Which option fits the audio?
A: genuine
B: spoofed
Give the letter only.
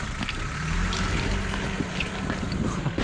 A